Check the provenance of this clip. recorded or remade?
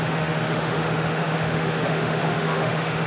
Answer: remade